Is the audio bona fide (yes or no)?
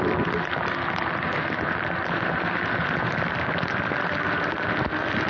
yes